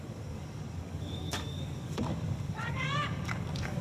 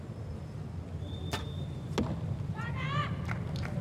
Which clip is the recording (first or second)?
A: second